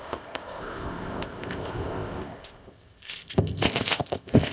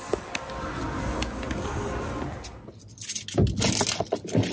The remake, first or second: first